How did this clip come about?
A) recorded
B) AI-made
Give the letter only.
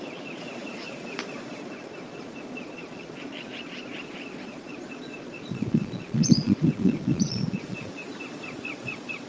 B